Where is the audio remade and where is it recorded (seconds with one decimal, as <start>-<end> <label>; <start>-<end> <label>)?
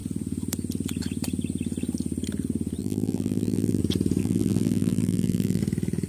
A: 0.0-2.8 recorded; 2.8-3.8 remade; 3.8-4.2 recorded; 4.2-5.6 remade; 5.6-6.1 recorded